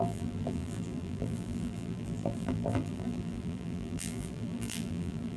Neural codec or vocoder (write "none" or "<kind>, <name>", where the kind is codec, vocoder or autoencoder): vocoder, BigVGAN v2